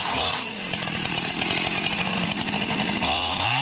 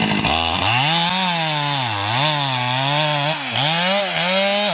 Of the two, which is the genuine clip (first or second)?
second